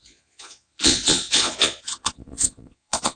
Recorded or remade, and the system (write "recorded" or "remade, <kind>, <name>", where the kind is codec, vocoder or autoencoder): remade, vocoder, Vocos